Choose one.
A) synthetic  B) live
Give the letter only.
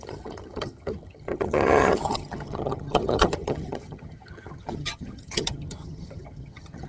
A